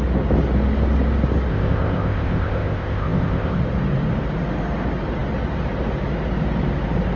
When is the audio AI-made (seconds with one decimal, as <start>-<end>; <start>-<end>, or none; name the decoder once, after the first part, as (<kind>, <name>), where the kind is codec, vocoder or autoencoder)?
1.5-3.6 (codec, ZipCodec)